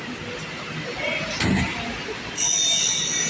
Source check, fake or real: real